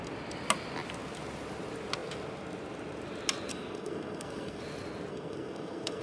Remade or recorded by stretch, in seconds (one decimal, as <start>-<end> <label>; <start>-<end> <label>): 0.0-3.5 recorded; 3.5-4.6 remade; 4.6-5.1 recorded; 5.1-6.0 remade

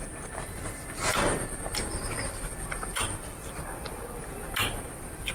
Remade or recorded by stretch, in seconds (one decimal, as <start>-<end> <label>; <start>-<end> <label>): 0.0-5.3 recorded

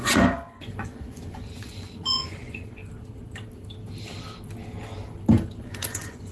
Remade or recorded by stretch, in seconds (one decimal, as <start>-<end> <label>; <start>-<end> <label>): 0.0-2.8 remade; 2.8-5.5 recorded; 5.5-6.3 remade

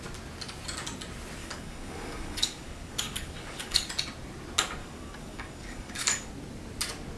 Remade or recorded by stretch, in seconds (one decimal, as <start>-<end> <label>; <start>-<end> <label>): 0.0-1.4 recorded; 1.4-3.9 remade; 3.9-4.8 recorded; 4.8-6.3 remade; 6.3-7.2 recorded

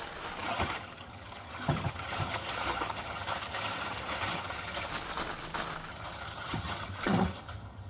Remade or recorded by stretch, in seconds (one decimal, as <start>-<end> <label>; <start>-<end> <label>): 0.0-0.4 recorded; 0.4-4.9 remade; 4.9-5.9 recorded; 5.9-7.9 remade